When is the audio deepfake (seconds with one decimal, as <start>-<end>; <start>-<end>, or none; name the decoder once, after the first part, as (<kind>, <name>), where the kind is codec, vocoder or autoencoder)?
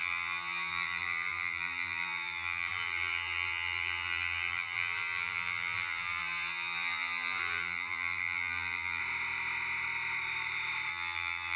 0.0-9.0 (vocoder, BigVGAN v2); 10.9-11.6